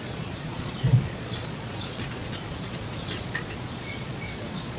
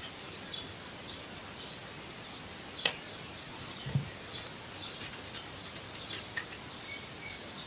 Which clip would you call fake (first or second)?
first